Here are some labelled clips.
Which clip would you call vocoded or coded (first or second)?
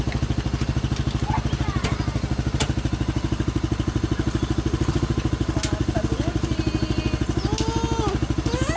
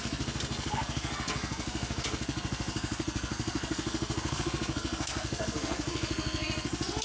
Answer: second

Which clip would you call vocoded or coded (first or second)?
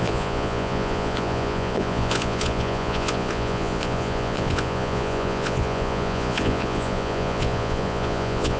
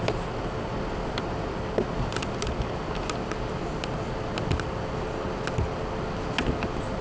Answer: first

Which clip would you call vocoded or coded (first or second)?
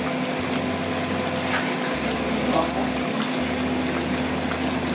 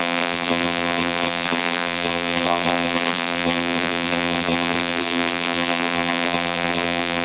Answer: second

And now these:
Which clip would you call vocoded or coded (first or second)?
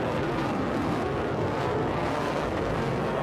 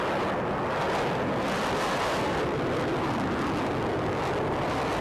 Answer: first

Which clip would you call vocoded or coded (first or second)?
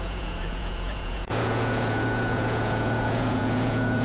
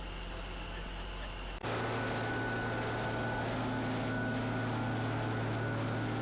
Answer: first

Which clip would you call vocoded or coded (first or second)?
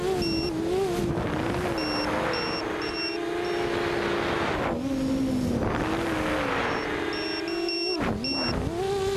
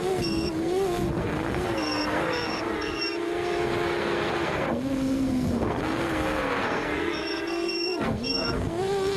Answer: second